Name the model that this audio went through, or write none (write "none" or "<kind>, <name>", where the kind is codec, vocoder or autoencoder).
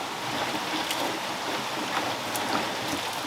none